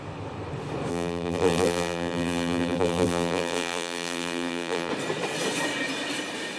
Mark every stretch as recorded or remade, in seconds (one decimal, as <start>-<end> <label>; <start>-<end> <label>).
0.0-0.9 recorded; 0.9-4.9 remade; 4.9-6.6 recorded

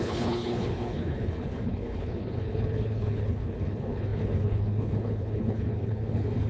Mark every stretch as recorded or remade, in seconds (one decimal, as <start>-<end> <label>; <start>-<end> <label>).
0.0-6.5 remade

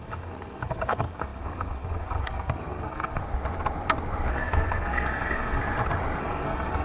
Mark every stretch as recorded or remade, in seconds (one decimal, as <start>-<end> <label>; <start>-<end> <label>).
0.0-3.2 remade; 3.2-4.3 recorded; 4.3-5.6 remade; 5.6-6.2 recorded; 6.2-6.8 remade